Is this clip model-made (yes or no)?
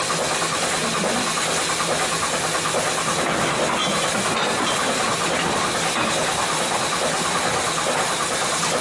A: no